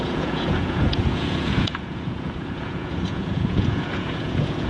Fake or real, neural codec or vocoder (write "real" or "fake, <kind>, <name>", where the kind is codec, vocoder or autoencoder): fake, vocoder, Vocos